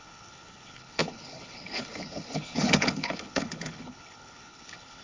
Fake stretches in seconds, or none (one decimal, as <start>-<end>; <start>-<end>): 0.0-5.0